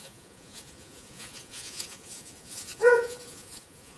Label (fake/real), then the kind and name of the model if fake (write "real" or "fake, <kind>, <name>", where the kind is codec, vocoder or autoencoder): fake, vocoder, Vocos